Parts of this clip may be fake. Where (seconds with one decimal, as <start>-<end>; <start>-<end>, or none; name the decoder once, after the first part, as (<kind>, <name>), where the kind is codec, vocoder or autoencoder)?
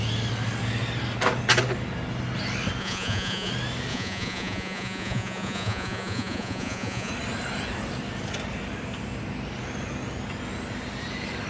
2.8-3.5 (vocoder, Vocos); 3.9-7.1